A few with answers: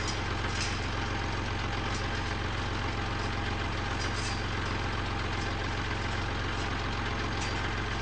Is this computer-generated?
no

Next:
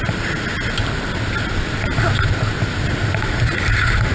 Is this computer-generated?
no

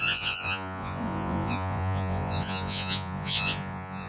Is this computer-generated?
yes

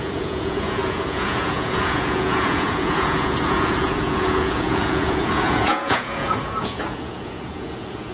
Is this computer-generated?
yes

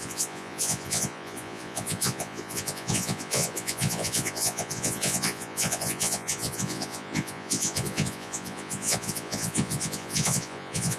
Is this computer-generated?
yes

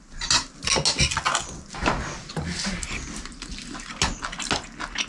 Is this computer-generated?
no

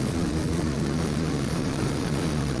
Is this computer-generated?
yes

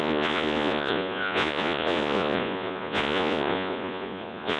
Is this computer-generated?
yes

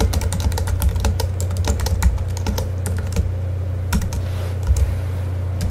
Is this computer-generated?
no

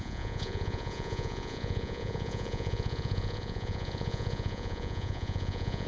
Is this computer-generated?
yes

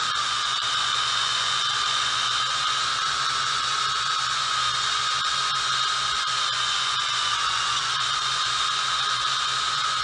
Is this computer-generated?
yes